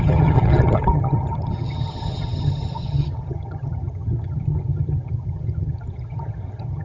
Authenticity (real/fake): fake